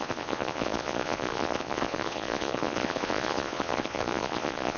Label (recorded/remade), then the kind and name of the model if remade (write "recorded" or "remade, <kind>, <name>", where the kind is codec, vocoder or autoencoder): remade, vocoder, Vocos